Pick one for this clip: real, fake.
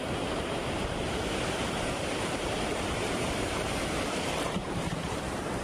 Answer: fake